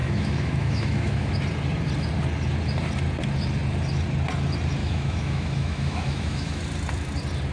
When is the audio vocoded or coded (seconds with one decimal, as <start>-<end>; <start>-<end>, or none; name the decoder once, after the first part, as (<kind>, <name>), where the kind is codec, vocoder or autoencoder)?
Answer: 0.0-1.3 (autoencoder, DAC-VAE); 4.8-6.6